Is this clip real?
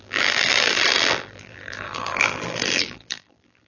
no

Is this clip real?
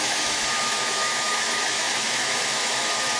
no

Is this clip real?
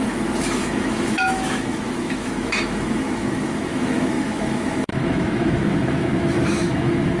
no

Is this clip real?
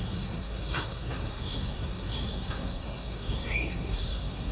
no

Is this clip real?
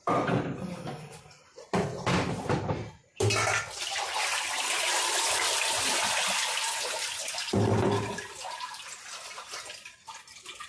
yes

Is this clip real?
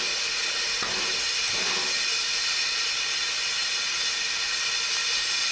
yes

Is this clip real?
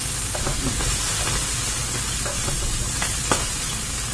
yes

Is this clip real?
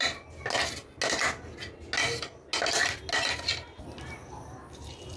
yes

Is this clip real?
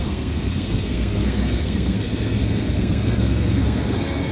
no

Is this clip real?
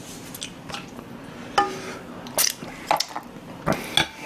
yes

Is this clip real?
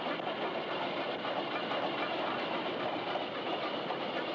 yes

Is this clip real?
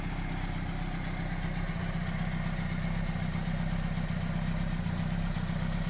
yes